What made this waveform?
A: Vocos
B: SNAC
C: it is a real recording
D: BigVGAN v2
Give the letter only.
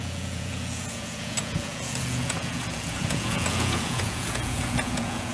A